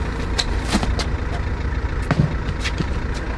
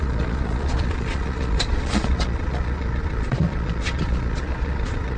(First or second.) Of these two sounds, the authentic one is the first